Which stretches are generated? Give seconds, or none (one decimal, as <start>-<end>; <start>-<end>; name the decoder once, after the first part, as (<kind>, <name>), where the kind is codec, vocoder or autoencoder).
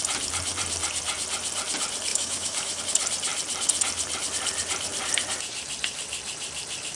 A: 2.1-2.8 (autoencoder, DAC-VAE)